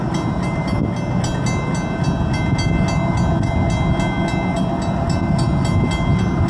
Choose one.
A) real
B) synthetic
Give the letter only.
A